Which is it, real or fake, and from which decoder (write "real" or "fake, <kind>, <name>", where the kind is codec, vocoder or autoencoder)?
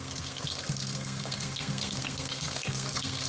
fake, codec, SNAC